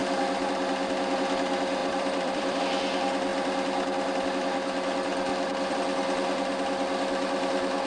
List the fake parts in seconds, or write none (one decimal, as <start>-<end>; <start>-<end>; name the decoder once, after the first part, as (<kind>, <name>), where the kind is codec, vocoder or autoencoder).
1.8-2.6 (vocoder, BigVGAN v2)